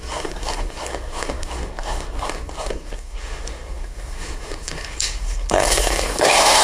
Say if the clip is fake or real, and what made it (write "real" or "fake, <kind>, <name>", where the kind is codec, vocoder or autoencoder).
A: fake, codec, SNAC